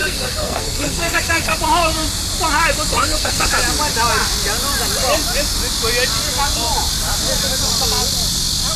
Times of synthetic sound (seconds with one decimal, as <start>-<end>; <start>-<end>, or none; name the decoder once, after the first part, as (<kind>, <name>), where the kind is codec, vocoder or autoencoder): 0.0-1.6 (codec, SNAC); 2.9-3.5